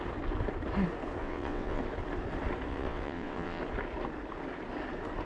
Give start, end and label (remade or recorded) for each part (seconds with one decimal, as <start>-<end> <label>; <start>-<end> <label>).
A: 0.0-1.2 recorded; 1.2-1.8 remade; 1.8-2.7 recorded; 2.7-3.6 remade; 3.6-5.2 recorded